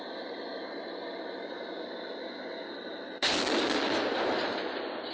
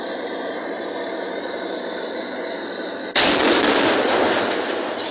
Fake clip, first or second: second